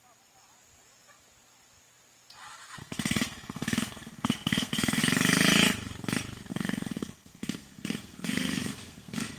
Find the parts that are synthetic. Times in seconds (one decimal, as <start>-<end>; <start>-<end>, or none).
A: 2.8-5.0; 6.5-9.4